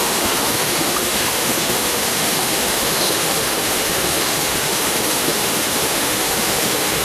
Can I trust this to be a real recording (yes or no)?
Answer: no